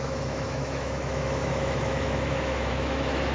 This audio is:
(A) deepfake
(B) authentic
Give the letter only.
A